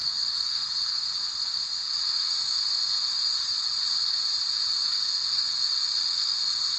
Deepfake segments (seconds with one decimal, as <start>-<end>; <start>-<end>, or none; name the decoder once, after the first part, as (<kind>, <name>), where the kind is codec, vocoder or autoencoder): 0.0-3.4 (autoencoder, DAC-VAE); 5.0-6.8